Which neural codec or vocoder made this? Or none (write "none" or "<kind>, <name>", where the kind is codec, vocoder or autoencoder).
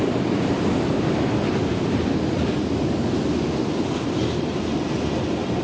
none